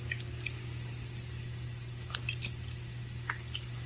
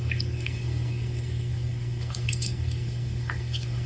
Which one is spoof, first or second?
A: second